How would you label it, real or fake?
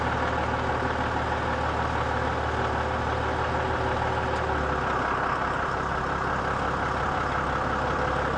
real